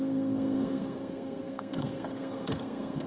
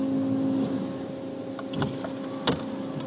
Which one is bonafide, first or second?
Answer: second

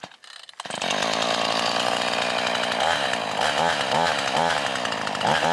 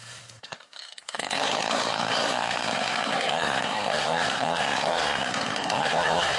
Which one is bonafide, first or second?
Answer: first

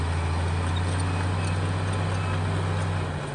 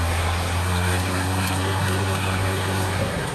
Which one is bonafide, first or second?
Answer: first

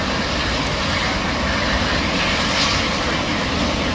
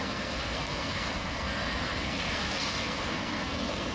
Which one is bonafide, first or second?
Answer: first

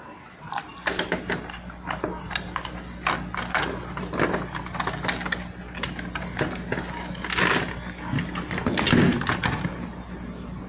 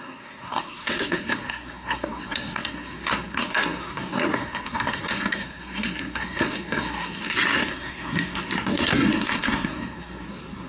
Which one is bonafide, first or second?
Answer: first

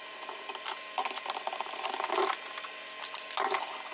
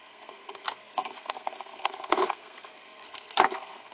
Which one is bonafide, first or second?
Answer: first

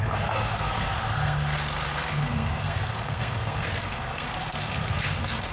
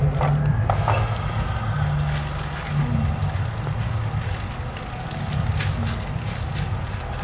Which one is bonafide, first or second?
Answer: second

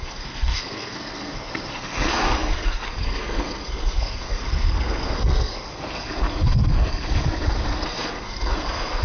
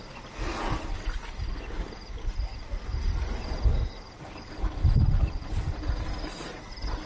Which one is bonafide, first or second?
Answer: second